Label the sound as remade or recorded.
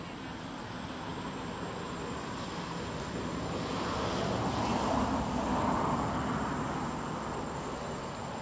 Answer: recorded